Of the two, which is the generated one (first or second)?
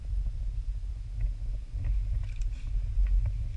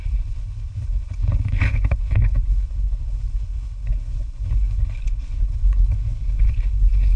second